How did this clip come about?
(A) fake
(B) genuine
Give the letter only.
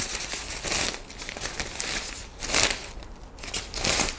B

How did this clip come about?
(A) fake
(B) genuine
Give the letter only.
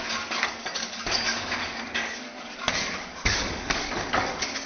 A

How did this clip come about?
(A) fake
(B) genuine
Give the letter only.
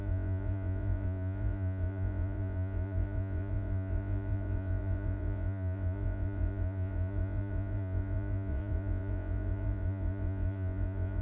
A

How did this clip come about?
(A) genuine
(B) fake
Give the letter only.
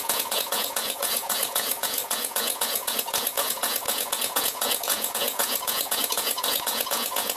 B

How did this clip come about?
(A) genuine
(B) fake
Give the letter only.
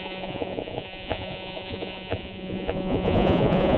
B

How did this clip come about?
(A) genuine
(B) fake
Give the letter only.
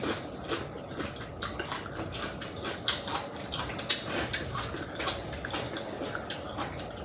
A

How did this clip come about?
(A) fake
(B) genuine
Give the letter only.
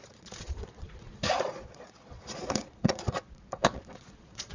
A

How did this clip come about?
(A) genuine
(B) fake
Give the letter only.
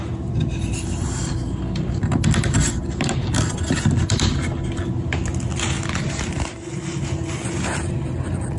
A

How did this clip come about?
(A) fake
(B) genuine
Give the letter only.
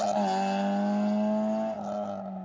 B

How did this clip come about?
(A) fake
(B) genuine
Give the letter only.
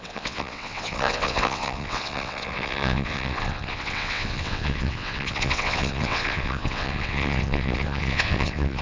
A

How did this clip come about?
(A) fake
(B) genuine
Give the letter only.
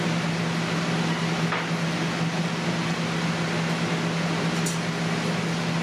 B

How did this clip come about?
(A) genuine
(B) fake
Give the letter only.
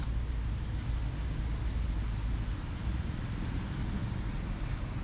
A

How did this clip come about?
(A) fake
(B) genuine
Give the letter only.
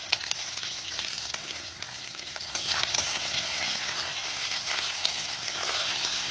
A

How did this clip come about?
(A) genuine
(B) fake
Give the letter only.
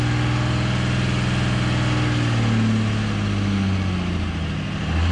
A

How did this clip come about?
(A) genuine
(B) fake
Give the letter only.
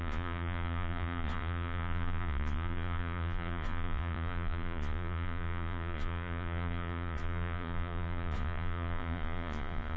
B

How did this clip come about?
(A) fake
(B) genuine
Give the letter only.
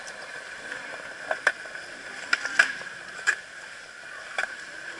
B